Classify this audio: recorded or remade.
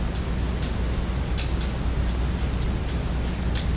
recorded